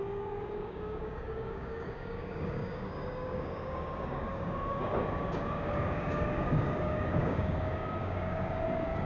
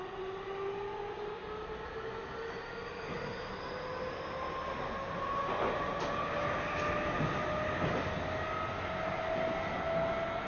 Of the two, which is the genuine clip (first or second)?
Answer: second